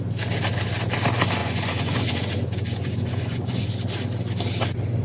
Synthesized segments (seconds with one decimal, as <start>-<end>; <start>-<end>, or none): 1.4-3.7